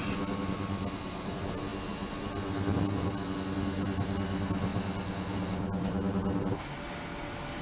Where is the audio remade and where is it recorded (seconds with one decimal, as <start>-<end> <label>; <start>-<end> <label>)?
0.0-7.6 recorded